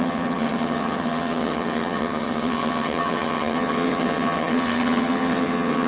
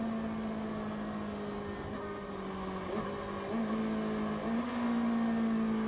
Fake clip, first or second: first